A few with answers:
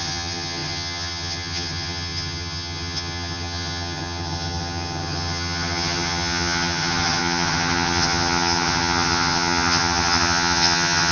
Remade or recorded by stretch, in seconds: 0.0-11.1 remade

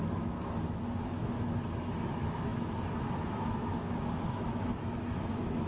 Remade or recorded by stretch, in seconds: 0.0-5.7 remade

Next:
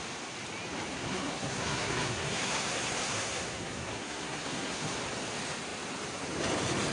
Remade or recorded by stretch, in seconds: 0.0-0.9 recorded; 0.9-5.0 remade; 5.0-6.9 recorded

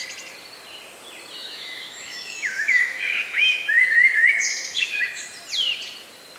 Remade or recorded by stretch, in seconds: 0.0-1.4 recorded; 1.4-5.2 remade; 5.2-6.4 recorded

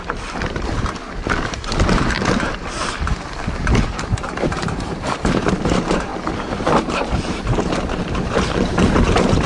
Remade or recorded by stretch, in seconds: 0.0-1.0 remade; 1.0-4.4 recorded; 4.4-6.1 remade; 6.1-6.8 recorded; 6.8-9.5 remade

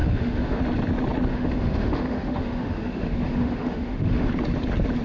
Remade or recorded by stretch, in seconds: 0.0-0.6 remade; 0.6-1.3 recorded; 1.3-4.3 remade; 4.3-5.0 recorded

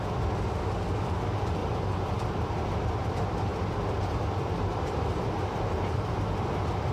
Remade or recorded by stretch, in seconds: 0.0-1.6 recorded; 1.6-2.6 remade; 2.6-3.5 recorded; 3.5-6.1 remade; 6.1-6.9 recorded